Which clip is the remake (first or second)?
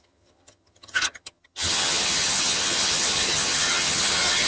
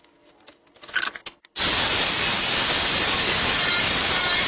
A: first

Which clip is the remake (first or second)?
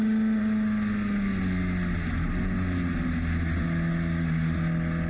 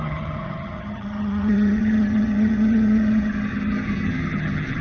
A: second